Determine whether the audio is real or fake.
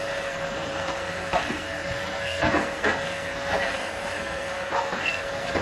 fake